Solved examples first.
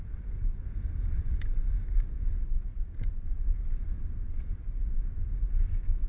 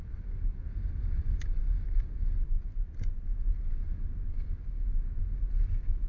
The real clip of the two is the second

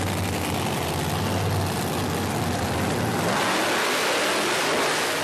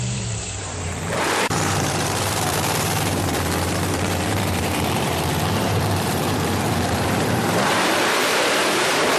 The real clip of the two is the first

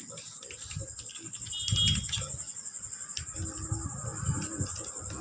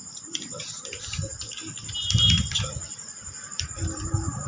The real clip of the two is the first